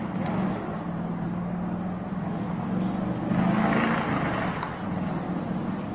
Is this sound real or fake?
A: real